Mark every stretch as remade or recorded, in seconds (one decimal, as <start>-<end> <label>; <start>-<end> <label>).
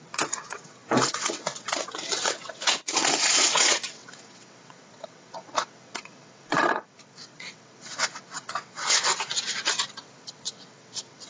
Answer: 0.0-9.1 remade; 9.1-10.0 recorded; 10.0-11.3 remade